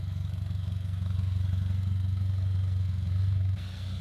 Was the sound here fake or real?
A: fake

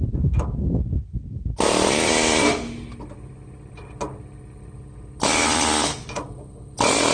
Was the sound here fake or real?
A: real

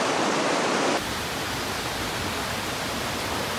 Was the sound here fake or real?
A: real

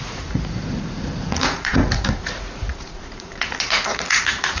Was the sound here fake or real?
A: fake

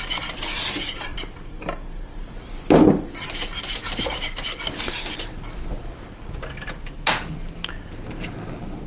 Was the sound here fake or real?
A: real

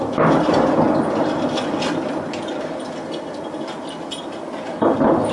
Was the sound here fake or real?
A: real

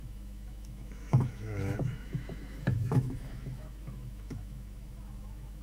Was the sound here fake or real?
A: fake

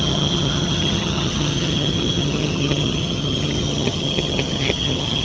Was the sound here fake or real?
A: fake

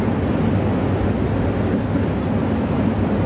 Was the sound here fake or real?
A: real